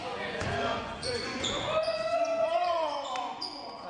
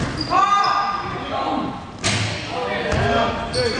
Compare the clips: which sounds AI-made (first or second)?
first